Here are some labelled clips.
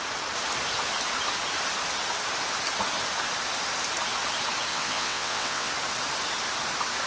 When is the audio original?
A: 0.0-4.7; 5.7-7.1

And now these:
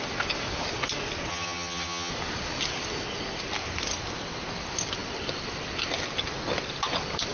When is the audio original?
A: 0.0-1.3; 2.1-7.3

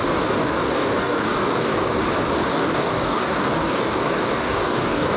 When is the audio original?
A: 0.0-0.4; 2.0-2.5

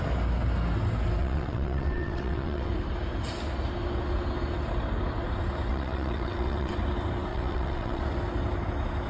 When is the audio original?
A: 0.0-1.2; 2.7-5.7; 6.7-7.3; 8.0-9.1

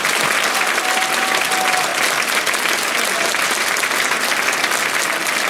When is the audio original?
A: 0.0-5.5

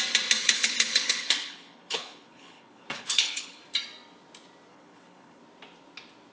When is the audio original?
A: 0.0-0.4; 3.6-4.7; 5.4-6.3